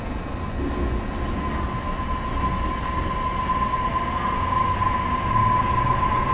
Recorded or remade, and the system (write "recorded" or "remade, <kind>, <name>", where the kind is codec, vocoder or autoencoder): recorded